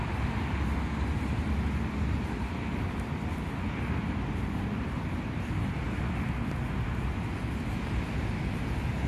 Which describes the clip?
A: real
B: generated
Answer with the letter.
A